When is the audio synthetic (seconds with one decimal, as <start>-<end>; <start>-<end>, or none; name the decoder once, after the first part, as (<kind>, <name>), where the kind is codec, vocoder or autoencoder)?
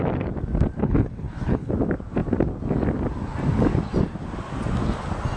0.8-1.7 (codec, HILCodec)